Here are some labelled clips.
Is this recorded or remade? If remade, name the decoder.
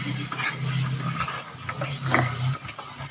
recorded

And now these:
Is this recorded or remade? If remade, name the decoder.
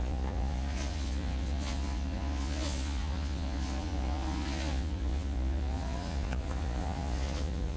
remade, vocoder, Vocos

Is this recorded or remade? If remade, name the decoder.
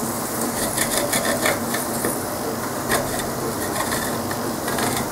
recorded